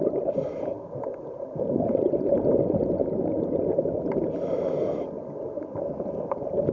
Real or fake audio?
real